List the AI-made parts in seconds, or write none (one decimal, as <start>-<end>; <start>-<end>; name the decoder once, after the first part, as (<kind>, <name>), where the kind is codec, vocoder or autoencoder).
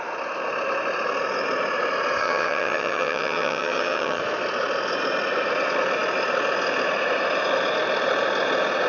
2.2-4.2 (vocoder, HiFi-GAN)